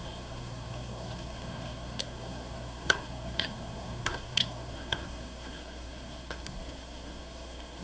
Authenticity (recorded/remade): remade